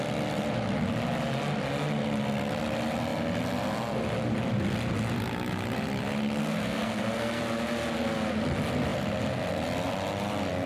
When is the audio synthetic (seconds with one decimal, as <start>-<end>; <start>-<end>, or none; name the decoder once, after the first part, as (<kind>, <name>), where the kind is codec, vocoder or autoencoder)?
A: 6.4-7.4 (codec, SNAC)